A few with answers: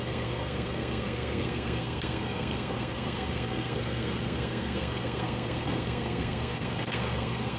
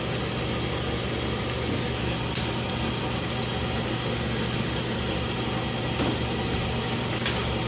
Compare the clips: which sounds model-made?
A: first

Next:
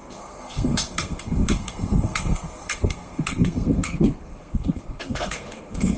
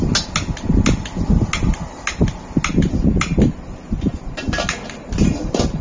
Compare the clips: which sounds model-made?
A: first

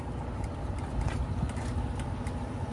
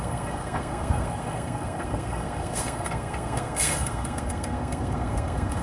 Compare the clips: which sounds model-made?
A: second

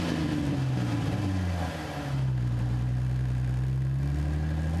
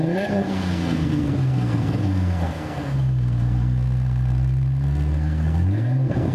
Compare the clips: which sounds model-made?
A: second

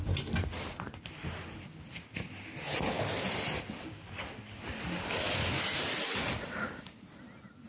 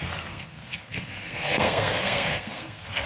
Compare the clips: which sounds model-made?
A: second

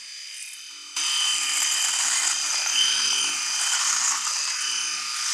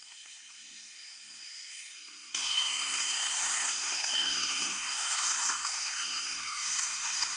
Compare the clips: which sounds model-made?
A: second